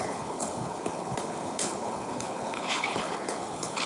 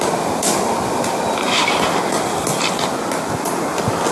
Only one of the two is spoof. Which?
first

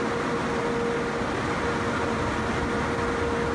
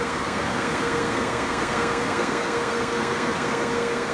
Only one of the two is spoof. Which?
second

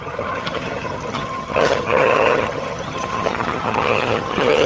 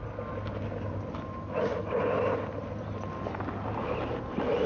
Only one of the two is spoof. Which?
first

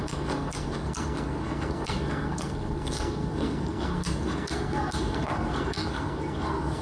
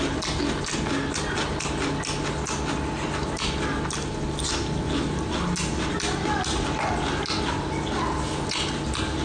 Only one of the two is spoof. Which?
first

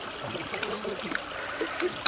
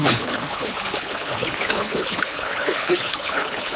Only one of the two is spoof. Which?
second